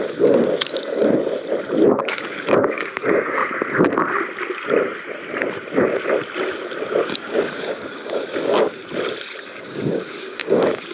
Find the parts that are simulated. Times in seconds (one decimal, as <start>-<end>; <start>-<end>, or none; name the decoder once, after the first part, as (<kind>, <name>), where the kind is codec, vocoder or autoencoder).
0.0-1.0 (codec, DAC); 2.0-3.4; 7.0-8.8; 9.4-10.9

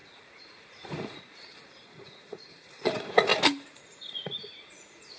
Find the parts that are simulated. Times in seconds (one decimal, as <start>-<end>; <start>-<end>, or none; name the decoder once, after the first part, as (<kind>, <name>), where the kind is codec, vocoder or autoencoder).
0.0-3.3 (vocoder, Vocos); 3.8-5.2